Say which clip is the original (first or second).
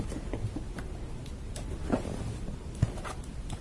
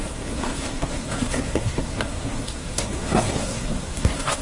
first